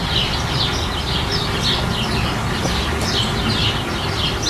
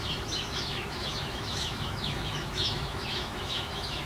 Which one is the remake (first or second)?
second